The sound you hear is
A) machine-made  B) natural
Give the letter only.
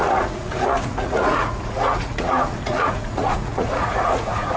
A